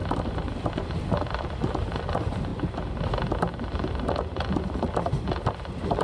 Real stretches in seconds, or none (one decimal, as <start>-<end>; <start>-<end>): 1.0-2.5; 3.1-6.0